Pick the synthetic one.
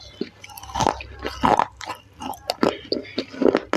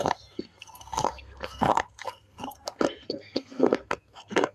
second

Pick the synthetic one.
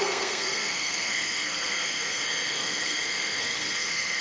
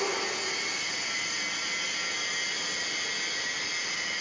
first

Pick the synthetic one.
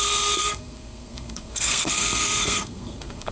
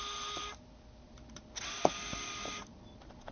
first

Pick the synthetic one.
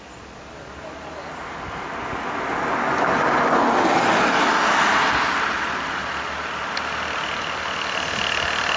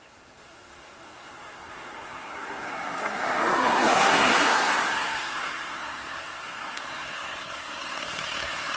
second